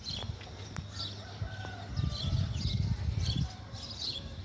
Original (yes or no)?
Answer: yes